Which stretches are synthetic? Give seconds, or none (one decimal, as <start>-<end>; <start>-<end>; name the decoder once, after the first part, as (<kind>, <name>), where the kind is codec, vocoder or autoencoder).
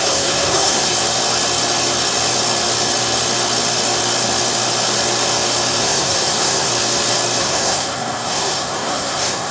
0.0-0.9 (codec, SNAC); 5.8-6.7; 7.4-9.5